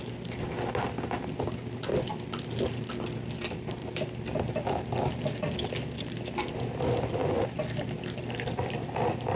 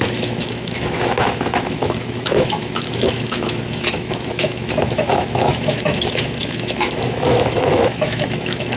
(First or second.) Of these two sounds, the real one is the first